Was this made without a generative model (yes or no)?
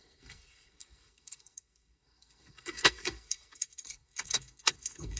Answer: no